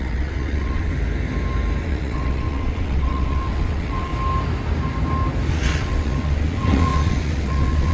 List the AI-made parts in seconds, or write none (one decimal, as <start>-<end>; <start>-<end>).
0.0-0.9; 1.8-4.1; 5.5-7.9

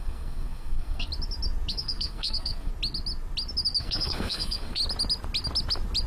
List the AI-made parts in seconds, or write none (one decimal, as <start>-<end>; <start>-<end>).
0.0-1.1; 1.7-2.7; 3.8-4.8

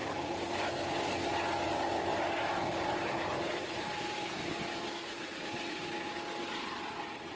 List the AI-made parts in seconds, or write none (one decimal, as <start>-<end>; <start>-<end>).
0.0-0.6; 2.1-4.5; 5.2-6.1